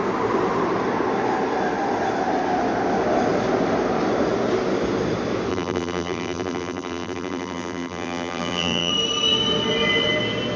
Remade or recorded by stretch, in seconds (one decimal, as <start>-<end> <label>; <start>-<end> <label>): 0.0-5.5 recorded; 5.5-8.9 remade; 8.9-10.6 recorded